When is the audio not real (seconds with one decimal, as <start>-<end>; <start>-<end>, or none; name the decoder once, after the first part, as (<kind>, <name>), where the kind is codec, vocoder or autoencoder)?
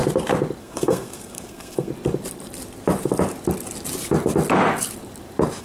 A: 0.6-1.9 (codec, SNAC)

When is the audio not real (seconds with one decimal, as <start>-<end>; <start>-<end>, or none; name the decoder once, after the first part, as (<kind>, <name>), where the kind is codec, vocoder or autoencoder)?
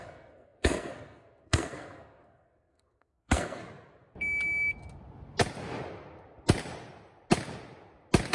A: 0.0-3.6 (codec, SNAC)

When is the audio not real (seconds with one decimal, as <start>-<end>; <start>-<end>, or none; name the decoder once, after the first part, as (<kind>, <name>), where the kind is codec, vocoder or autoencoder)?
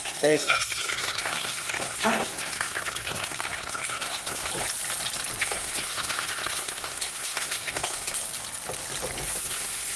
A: 0.0-4.5 (codec, SNAC); 5.4-8.2; 9.4-10.0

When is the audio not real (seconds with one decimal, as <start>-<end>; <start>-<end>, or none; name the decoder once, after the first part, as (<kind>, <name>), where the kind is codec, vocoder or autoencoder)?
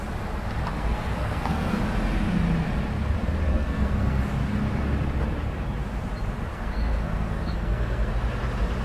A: 0.7-1.8 (codec, SNAC); 3.5-4.2; 6.5-8.1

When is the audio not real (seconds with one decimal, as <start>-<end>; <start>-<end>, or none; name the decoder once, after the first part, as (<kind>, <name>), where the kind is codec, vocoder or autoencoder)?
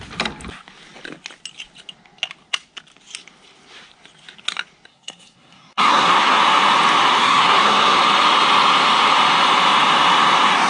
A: 4.9-6.4 (codec, SNAC); 7.2-8.0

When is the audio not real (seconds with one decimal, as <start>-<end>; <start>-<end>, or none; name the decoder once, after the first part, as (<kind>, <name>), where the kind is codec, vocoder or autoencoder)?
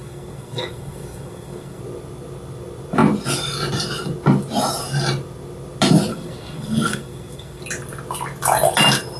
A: 0.0-1.8 (codec, SNAC); 6.1-7.6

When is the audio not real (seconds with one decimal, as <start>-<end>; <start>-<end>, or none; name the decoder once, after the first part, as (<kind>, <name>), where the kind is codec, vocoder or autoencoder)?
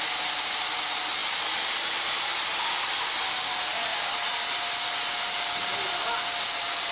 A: none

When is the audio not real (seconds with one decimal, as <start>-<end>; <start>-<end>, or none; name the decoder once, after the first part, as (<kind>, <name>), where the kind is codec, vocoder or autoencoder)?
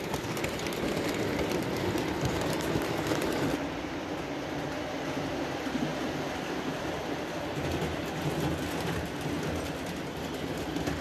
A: none